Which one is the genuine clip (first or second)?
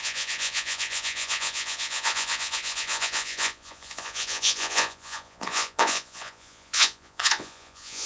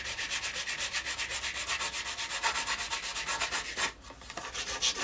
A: second